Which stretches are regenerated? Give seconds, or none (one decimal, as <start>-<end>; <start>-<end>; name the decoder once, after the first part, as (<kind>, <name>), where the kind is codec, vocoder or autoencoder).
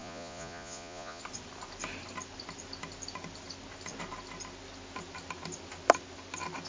0.0-1.2 (vocoder, Vocos)